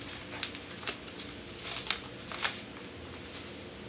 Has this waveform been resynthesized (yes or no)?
no